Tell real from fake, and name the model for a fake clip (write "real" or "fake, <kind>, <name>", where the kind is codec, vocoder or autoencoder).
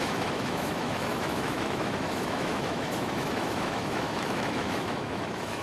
fake, autoencoder, DAC-VAE